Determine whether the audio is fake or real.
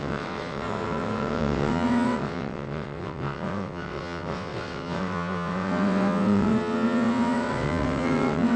fake